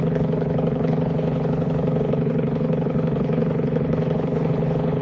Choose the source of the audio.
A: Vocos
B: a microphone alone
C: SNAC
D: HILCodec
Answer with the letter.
D